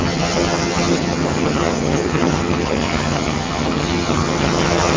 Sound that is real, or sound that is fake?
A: fake